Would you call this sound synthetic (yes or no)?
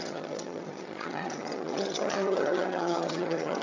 yes